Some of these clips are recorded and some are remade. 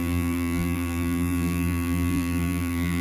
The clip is remade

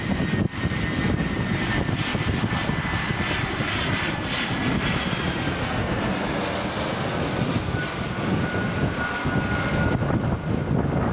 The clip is recorded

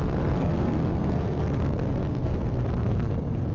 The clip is remade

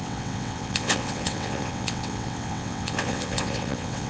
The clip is remade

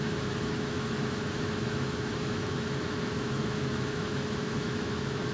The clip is remade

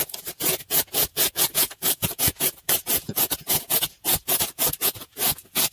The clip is remade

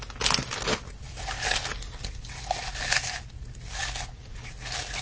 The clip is recorded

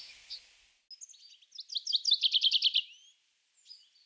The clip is recorded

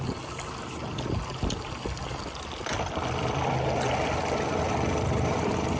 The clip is recorded